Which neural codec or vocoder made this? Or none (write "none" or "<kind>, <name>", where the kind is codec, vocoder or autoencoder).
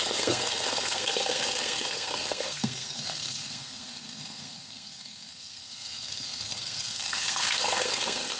codec, SNAC